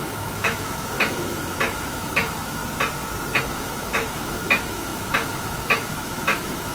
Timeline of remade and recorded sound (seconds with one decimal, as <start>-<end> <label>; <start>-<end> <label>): 0.0-2.6 remade; 2.6-3.4 recorded; 3.4-6.7 remade